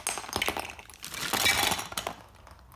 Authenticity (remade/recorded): recorded